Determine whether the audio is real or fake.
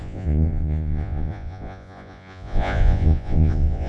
fake